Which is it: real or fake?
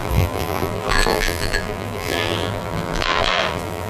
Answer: fake